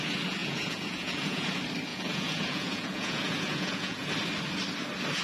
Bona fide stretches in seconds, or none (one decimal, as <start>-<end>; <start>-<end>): 0.0-0.4; 1.5-1.9; 4.1-5.2